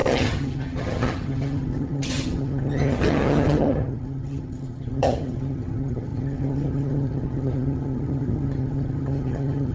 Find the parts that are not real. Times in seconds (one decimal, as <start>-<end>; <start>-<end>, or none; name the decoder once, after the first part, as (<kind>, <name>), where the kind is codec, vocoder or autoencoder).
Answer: 0.0-9.7 (vocoder, HiFi-GAN)